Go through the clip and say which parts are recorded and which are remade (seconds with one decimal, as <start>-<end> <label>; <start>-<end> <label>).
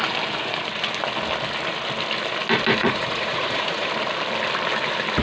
0.0-2.8 recorded; 2.8-3.9 remade; 3.9-5.2 recorded